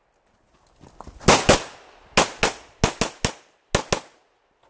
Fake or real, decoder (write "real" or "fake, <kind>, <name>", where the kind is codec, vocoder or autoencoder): real